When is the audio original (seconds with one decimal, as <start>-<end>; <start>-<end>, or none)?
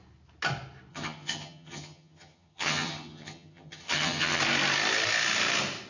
0.0-0.9; 4.4-5.9